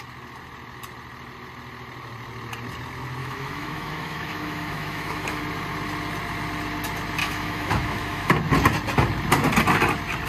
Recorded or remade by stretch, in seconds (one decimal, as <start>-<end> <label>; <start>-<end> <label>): 0.0-3.2 recorded; 3.2-5.4 remade; 5.4-7.2 recorded; 7.2-8.4 remade; 8.4-10.3 recorded